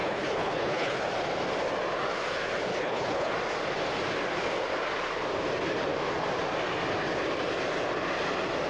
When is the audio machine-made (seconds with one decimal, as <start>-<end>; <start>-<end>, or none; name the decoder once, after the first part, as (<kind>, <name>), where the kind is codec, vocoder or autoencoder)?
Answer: 0.0-1.0 (codec, HILCodec); 2.7-3.3